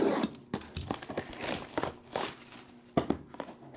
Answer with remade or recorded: recorded